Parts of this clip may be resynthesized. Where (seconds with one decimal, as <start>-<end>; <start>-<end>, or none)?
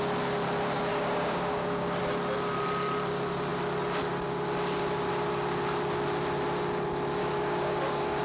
0.9-2.0; 7.2-8.2